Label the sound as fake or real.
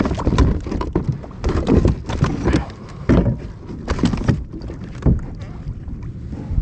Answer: real